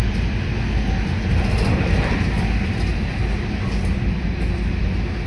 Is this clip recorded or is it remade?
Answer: recorded